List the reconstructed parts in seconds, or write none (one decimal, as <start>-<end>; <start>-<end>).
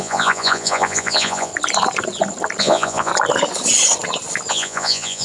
0.0-1.5; 2.6-3.1; 4.5-5.2